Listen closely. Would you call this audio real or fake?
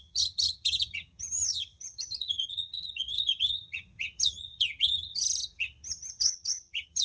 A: fake